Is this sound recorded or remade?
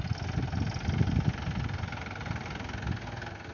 recorded